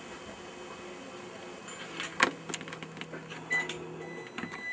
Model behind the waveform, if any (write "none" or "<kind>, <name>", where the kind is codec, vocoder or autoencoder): none